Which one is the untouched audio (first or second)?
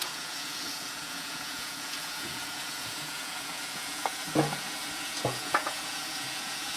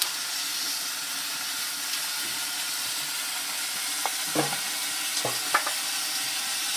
second